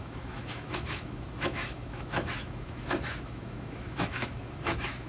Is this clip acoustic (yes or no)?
no